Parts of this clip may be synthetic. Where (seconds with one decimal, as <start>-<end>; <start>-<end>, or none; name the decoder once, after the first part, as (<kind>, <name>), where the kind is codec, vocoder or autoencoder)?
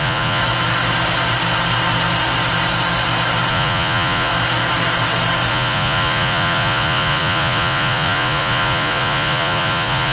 0.0-0.4 (vocoder, Vocos); 3.5-4.3; 5.5-10.1